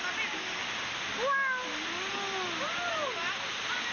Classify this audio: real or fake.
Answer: real